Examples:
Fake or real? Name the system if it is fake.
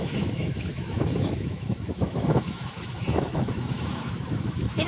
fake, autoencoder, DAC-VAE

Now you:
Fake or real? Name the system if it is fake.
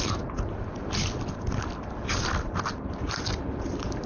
real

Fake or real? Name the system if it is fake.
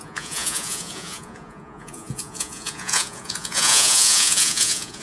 fake, vocoder, Vocos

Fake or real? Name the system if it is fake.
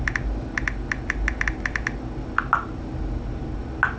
real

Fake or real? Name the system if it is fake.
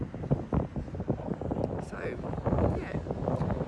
real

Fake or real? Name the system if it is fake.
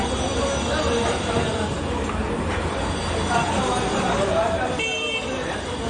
real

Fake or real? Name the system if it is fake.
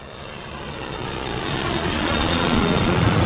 fake, vocoder, Vocos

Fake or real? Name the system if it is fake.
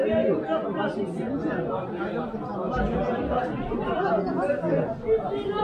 real